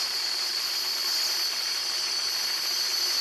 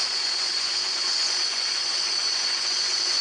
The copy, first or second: second